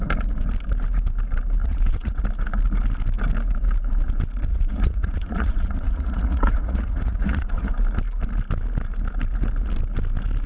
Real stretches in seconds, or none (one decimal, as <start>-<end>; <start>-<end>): 0.0-1.6; 2.2-4.5; 7.7-10.5